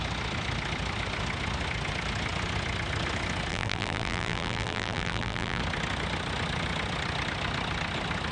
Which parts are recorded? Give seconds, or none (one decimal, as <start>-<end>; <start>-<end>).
0.0-3.5; 5.6-8.3